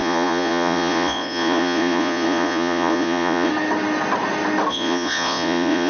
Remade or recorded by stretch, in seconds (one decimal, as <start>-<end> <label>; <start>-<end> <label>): 0.0-3.5 remade; 3.5-4.7 recorded; 4.7-5.9 remade